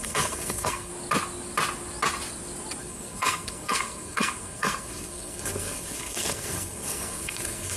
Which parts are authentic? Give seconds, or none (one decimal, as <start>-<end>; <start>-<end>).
0.9-2.8